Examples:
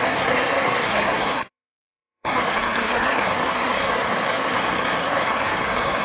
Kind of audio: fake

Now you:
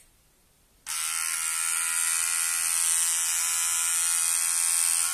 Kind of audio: real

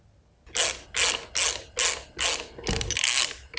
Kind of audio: real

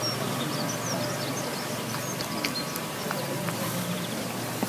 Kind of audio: real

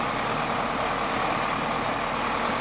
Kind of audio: real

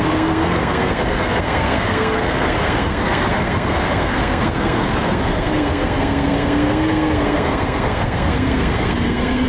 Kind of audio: fake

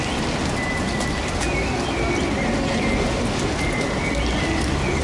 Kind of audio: real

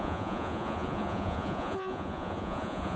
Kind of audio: fake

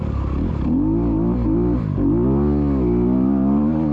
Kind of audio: real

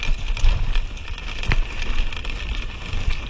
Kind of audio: real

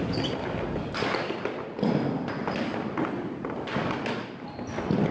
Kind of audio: real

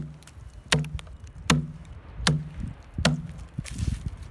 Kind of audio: real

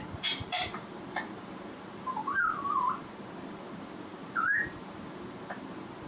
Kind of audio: fake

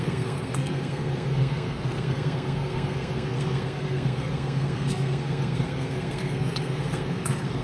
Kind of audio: fake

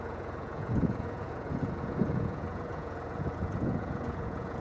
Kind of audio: fake